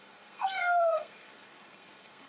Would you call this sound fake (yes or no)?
yes